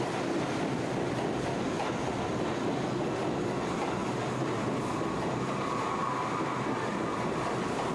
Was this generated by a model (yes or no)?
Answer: no